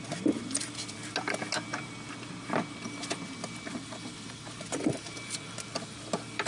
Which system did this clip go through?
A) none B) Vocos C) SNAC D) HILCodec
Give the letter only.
A